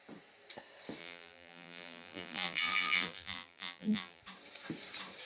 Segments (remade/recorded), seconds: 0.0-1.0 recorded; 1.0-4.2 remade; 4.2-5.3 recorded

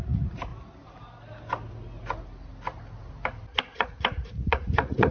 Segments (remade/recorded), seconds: 0.0-0.5 remade; 0.5-3.6 recorded; 3.6-5.1 remade

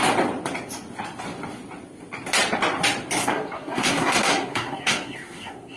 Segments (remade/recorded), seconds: 0.0-3.2 recorded; 3.2-5.8 remade

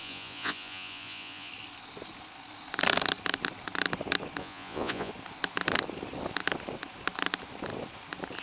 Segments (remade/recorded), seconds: 0.0-1.5 remade; 1.5-4.4 recorded; 4.4-5.1 remade; 5.1-8.4 recorded

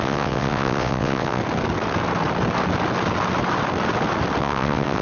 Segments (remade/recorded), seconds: 0.0-1.4 remade; 1.4-4.4 recorded; 4.4-5.0 remade

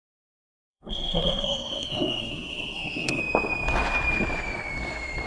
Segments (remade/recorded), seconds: 0.0-3.2 remade; 3.2-5.3 recorded